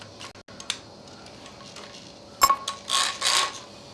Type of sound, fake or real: real